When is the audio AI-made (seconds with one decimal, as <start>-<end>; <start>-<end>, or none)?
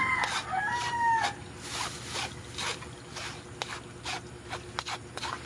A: none